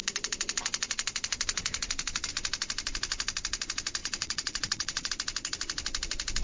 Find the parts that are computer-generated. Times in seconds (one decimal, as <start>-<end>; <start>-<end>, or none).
4.0-5.1